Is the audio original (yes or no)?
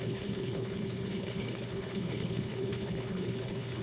no